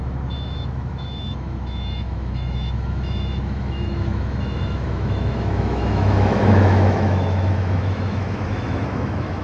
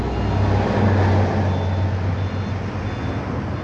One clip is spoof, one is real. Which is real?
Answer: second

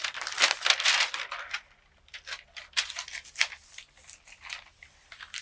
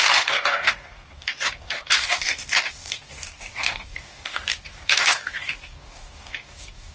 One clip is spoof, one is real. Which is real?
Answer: first